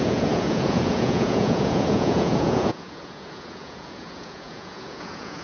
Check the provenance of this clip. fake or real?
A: fake